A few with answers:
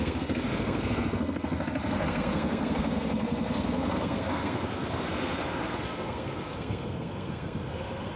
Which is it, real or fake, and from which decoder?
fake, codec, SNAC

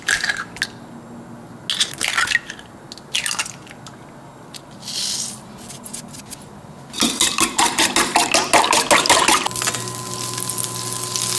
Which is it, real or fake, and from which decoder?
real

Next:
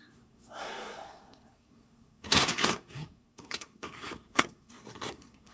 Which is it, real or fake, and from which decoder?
fake, codec, SNAC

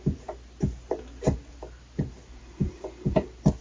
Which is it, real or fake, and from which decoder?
real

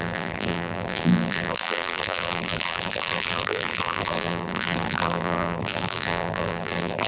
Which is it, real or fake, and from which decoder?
fake, vocoder, BigVGAN v2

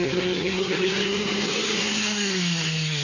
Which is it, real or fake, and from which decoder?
fake, codec, SNAC